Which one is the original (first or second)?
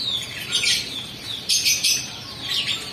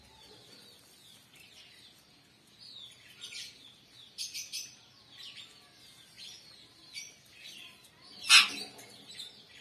second